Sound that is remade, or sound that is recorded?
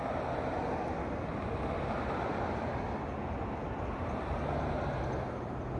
recorded